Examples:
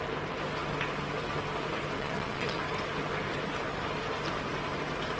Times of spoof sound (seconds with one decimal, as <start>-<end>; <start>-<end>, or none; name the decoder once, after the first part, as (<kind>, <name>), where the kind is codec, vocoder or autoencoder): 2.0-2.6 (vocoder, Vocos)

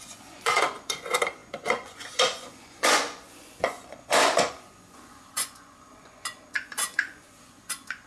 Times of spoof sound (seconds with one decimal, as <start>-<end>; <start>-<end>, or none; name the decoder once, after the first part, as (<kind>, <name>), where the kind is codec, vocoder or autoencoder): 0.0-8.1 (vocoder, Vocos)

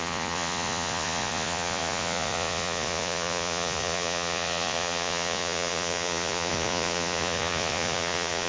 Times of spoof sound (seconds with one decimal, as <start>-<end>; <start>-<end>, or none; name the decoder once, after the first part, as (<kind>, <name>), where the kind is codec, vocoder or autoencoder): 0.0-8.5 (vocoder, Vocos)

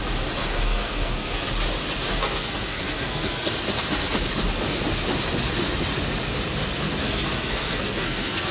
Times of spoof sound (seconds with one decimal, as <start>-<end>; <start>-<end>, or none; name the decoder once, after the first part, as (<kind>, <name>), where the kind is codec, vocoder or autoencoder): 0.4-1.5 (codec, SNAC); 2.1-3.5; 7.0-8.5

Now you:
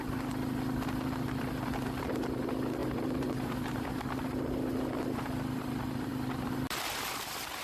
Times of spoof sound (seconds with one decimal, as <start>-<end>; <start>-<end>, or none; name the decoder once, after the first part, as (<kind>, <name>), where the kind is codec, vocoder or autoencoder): 2.8-3.9 (vocoder, BigVGAN v2)

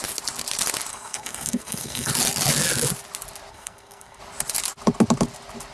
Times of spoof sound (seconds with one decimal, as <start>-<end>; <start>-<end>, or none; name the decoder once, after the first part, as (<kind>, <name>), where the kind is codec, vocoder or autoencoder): 0.9-2.1 (codec, SNAC); 3.5-4.2

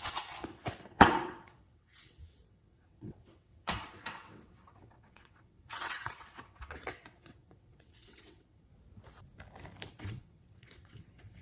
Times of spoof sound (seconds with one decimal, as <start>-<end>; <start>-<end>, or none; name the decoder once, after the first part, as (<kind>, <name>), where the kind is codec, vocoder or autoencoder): 0.0-8.7 (vocoder, WaveNeXt); 9.9-11.4

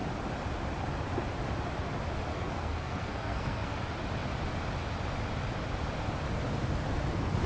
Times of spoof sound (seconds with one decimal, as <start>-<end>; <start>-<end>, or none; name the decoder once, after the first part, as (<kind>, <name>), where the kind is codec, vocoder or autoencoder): 2.3-3.8 (codec, SNAC)